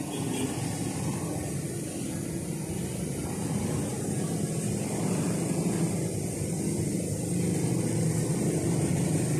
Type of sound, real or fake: real